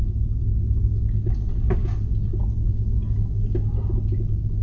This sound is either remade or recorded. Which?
recorded